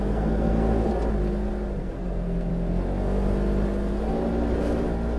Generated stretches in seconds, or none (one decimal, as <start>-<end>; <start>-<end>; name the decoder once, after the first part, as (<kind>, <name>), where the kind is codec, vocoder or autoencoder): 0.0-0.9 (codec, SNAC); 1.8-2.5